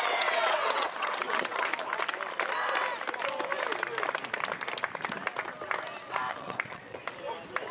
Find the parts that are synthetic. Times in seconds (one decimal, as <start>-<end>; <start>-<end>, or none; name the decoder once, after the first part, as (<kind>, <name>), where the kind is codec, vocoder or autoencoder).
0.0-1.7 (vocoder, WaveNeXt); 6.3-7.0